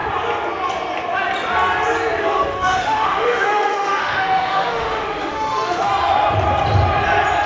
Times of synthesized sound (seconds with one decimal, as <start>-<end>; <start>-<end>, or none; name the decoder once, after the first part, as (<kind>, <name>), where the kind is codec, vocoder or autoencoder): 2.2-5.9 (autoencoder, DAC-VAE)